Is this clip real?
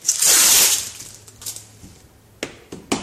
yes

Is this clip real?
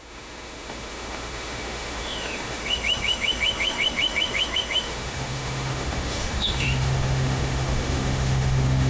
no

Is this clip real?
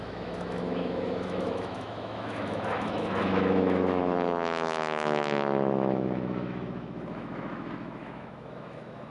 no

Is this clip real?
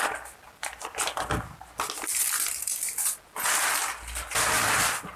yes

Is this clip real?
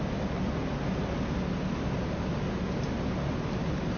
yes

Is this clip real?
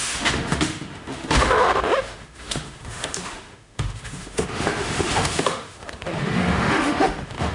no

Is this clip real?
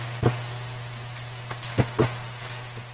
yes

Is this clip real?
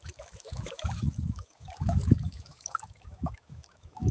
no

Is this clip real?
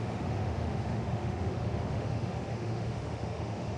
no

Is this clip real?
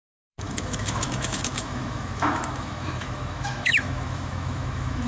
no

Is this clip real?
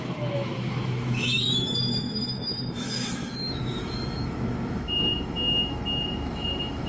no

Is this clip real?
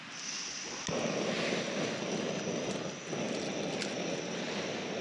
yes